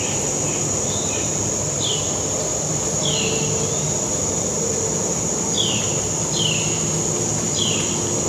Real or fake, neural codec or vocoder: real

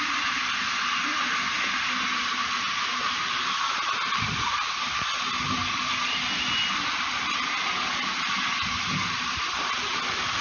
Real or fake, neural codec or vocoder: real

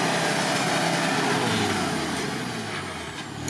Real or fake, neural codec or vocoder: real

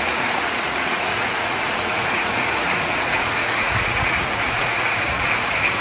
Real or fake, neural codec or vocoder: fake, vocoder, Vocos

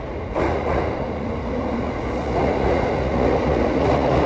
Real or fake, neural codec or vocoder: fake, vocoder, Vocos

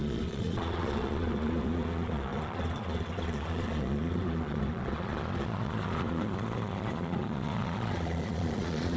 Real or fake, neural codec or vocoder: fake, vocoder, Vocos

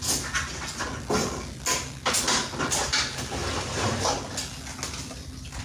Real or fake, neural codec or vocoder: real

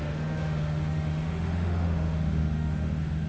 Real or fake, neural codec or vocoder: fake, autoencoder, DAC-VAE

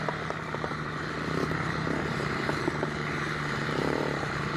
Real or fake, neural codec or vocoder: fake, vocoder, BigVGAN v2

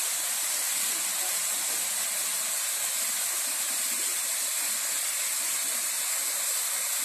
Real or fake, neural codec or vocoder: real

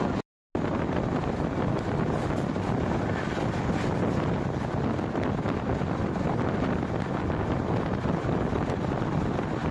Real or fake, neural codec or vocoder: real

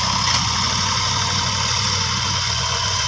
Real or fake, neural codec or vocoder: fake, vocoder, Vocos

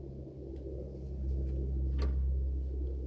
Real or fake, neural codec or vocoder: real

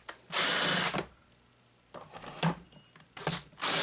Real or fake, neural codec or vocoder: real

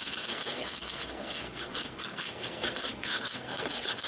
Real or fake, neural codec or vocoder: fake, codec, SNAC